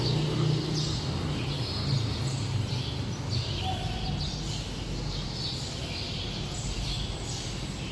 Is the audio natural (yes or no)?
yes